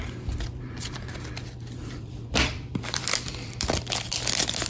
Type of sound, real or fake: fake